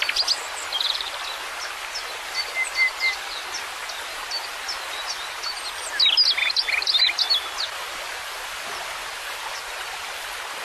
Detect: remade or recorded recorded